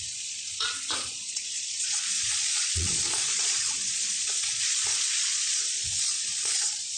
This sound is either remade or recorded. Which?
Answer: remade